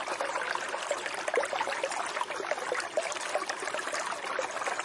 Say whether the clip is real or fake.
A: real